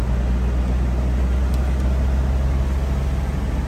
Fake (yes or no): no